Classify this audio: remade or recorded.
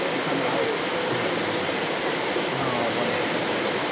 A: recorded